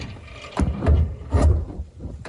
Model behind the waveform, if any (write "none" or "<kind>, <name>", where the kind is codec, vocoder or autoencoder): vocoder, BigVGAN v2